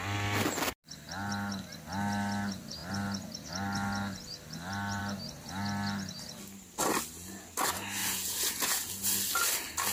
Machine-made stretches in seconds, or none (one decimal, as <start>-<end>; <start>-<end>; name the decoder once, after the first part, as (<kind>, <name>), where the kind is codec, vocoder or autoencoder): 8.0-8.9 (vocoder, Vocos)